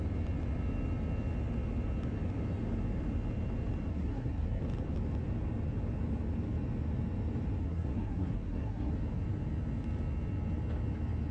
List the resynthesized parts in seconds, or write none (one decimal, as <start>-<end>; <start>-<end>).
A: 3.9-4.6; 7.6-8.9

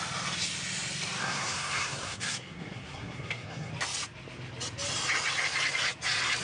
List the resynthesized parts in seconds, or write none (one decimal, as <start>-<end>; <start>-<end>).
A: 1.2-3.7

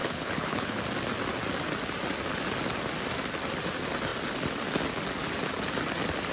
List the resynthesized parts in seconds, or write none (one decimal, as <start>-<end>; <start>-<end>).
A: 0.0-0.8

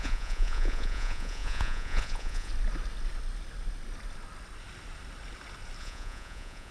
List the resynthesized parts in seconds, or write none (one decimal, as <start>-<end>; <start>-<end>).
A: 0.0-2.5; 5.8-6.7